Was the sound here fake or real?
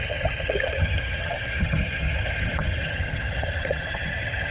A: fake